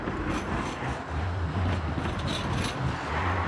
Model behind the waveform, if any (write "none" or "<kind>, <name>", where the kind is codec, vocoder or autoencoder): none